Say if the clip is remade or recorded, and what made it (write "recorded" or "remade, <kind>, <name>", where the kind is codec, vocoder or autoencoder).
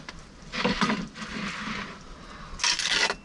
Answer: recorded